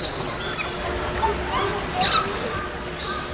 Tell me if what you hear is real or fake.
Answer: real